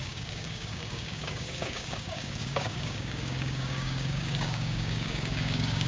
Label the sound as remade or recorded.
remade